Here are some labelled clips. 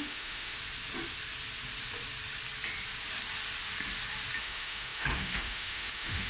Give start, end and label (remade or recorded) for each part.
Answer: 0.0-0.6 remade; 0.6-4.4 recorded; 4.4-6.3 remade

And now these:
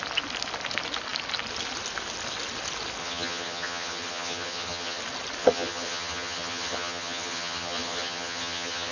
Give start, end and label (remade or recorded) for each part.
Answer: 0.0-3.0 recorded; 3.0-5.0 remade; 5.0-5.4 recorded; 5.4-8.9 remade

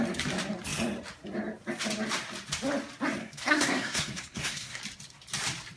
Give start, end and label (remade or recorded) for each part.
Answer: 0.0-3.2 recorded; 3.2-4.8 remade; 4.8-5.8 recorded